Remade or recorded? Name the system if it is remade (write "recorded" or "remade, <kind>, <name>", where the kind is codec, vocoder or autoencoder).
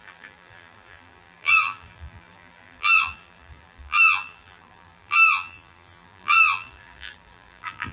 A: remade, vocoder, BigVGAN v2